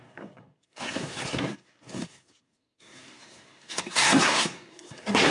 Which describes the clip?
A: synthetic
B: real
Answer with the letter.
A